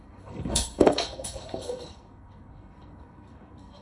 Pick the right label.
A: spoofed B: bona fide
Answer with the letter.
A